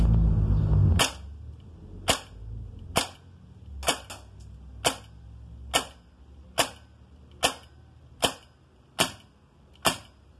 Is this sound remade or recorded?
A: recorded